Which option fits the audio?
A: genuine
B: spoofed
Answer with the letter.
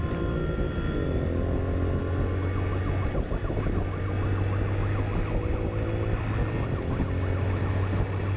A